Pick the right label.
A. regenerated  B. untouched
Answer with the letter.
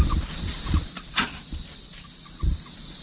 B